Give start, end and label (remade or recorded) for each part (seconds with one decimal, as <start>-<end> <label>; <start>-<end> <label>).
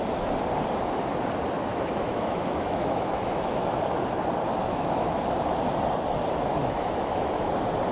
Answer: 0.0-1.7 recorded; 1.7-4.0 remade; 4.0-4.6 recorded; 4.6-5.2 remade; 5.2-6.5 recorded; 6.5-7.5 remade; 7.5-7.9 recorded